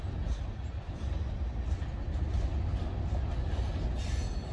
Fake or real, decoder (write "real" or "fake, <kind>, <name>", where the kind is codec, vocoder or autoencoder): real